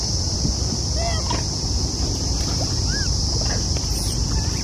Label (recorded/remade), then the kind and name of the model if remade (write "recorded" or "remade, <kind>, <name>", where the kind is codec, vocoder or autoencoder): recorded